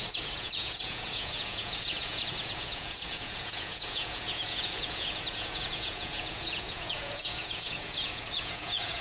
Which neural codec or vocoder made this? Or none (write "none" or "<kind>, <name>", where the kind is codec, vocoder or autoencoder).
vocoder, Vocos